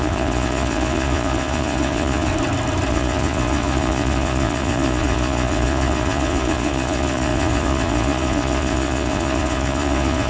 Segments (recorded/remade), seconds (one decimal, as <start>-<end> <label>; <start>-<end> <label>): 0.0-2.3 remade; 2.3-2.9 recorded; 2.9-10.3 remade